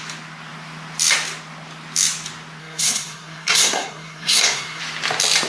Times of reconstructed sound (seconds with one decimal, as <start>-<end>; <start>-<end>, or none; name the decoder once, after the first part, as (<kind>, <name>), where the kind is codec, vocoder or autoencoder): 2.6-4.8 (codec, SNAC)